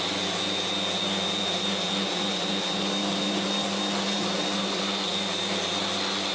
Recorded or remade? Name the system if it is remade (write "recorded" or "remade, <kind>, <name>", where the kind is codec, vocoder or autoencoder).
recorded